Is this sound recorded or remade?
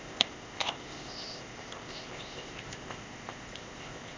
remade